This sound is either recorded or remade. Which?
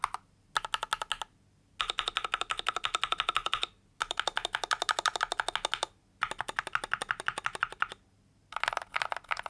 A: recorded